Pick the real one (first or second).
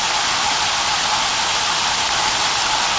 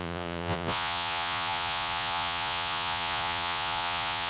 first